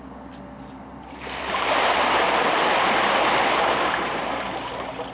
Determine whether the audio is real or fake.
real